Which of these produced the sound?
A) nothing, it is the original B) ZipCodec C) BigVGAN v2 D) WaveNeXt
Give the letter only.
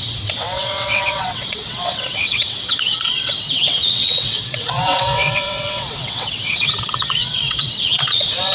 D